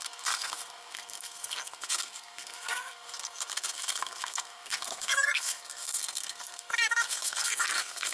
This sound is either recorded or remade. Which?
remade